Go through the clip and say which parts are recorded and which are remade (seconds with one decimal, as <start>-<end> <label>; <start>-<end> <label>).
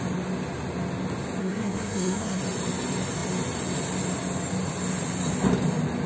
0.0-1.4 recorded; 1.4-2.4 remade; 2.4-6.1 recorded